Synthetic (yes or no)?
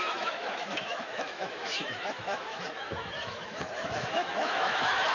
yes